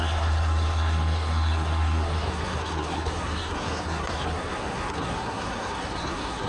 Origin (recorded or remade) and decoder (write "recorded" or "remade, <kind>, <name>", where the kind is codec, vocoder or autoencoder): remade, codec, SNAC